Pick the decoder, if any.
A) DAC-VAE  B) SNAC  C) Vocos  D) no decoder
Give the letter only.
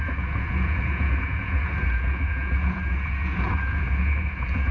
C